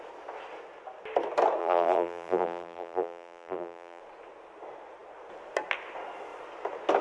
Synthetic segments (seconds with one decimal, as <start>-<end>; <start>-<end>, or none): 1.6-4.0